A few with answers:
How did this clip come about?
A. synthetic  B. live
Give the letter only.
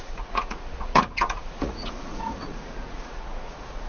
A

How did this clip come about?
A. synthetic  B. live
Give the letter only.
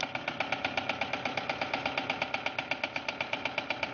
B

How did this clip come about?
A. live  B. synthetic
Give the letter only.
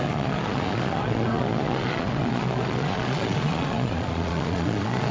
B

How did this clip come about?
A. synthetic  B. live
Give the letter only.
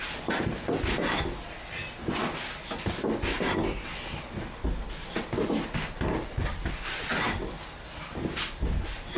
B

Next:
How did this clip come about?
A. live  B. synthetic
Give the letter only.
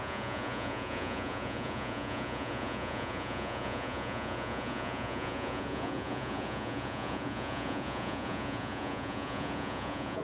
B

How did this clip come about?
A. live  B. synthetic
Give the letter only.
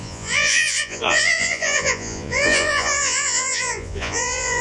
B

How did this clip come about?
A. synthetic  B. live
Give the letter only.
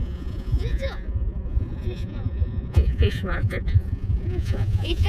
A